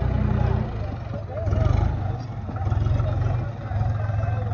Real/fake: real